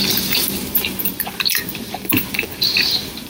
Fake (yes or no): yes